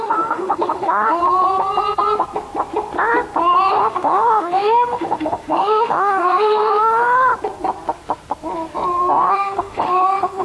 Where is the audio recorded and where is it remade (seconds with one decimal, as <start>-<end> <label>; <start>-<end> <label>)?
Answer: 0.0-1.2 remade; 1.2-3.7 recorded; 3.7-7.3 remade; 7.3-9.3 recorded; 9.3-10.4 remade